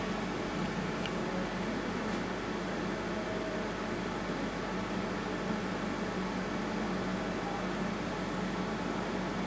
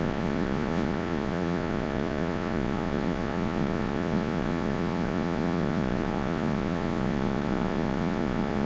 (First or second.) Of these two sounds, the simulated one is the second